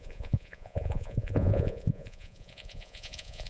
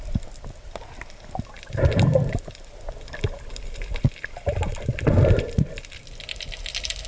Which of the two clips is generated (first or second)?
first